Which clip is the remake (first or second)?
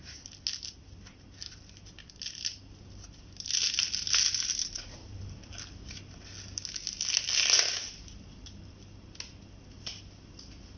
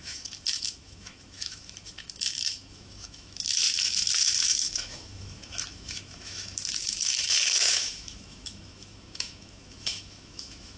second